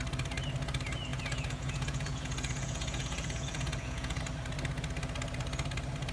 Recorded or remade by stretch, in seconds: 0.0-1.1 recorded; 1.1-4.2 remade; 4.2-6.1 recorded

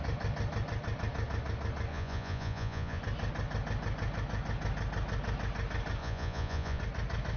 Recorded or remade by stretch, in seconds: 0.0-1.9 recorded; 1.9-3.0 remade; 3.0-6.0 recorded; 6.0-6.8 remade; 6.8-7.4 recorded

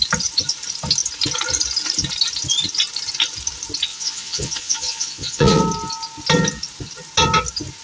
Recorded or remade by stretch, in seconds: 0.0-3.9 recorded; 3.9-5.6 remade; 5.6-7.8 recorded